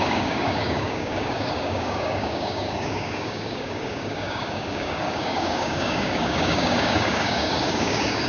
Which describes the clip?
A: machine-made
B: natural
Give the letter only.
A